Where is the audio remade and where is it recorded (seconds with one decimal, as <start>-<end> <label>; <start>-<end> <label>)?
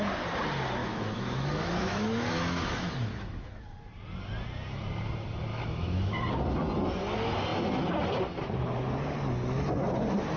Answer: 0.0-0.8 recorded; 0.8-3.5 remade; 3.5-5.5 recorded; 5.5-6.1 remade; 6.1-10.4 recorded